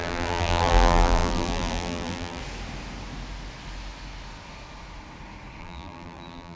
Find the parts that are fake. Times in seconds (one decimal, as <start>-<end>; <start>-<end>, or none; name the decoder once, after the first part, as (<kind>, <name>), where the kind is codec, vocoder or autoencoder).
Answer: 0.0-2.4 (vocoder, BigVGAN v2); 5.6-6.6